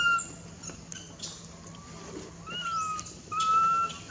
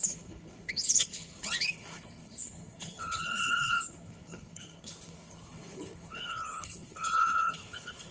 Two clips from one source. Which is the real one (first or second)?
first